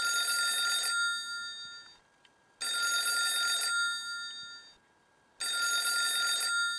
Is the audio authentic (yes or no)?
yes